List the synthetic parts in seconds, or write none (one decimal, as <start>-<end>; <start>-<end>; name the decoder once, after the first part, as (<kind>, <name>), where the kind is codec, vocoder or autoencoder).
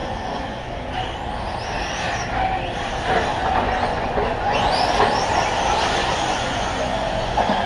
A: 0.0-0.9 (vocoder, Vocos); 3.3-4.7; 6.0-7.7